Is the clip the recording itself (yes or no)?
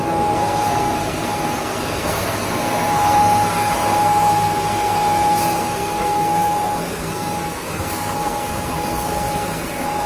no